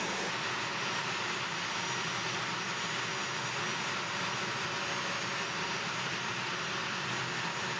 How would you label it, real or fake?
real